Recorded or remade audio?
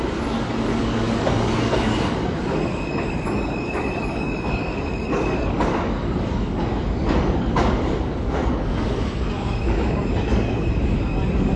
remade